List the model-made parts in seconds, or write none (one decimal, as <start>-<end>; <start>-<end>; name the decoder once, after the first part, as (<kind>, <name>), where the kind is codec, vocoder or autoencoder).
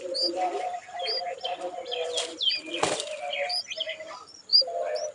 4.5-5.1 (vocoder, BigVGAN v2)